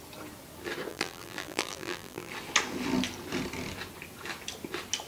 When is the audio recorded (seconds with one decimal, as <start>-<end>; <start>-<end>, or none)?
0.0-0.9; 2.3-5.1